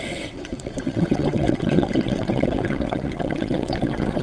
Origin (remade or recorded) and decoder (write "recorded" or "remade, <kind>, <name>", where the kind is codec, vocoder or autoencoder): remade, vocoder, WaveNeXt